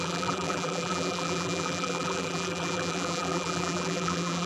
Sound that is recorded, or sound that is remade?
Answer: remade